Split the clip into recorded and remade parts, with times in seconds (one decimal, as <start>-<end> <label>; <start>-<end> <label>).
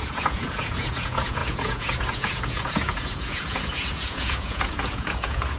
0.0-5.6 remade